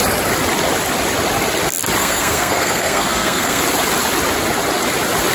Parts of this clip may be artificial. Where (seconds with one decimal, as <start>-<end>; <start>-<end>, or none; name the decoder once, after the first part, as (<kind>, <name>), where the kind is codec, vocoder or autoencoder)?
2.0-3.6 (codec, SNAC)